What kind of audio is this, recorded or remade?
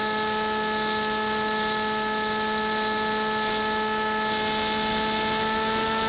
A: recorded